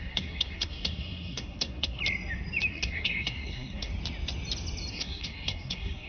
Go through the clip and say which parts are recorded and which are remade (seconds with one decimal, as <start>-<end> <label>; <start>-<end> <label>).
0.0-2.0 remade; 2.0-2.7 recorded; 2.7-3.9 remade; 3.9-4.9 recorded; 4.9-6.1 remade